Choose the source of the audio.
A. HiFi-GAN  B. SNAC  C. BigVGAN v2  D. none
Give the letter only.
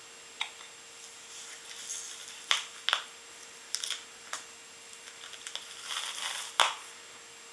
D